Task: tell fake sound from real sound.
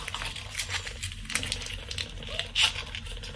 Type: real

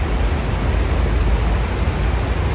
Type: real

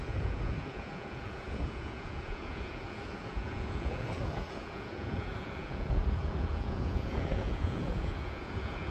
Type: fake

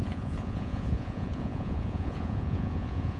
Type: fake